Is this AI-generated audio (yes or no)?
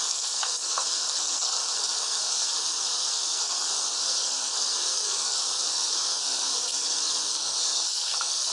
yes